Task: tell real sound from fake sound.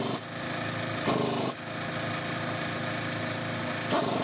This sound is real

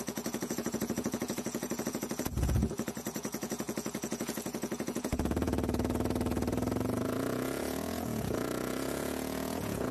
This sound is fake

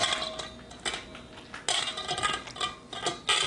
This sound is real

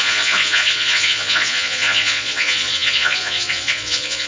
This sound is fake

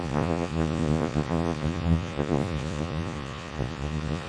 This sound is fake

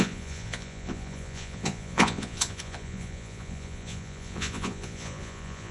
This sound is fake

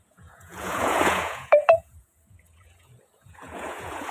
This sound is fake